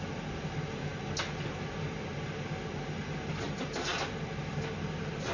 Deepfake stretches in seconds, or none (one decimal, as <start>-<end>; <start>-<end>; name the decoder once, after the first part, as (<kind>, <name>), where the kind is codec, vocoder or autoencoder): none